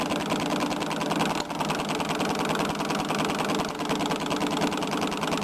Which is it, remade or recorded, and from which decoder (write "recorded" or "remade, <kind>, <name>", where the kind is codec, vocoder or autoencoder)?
recorded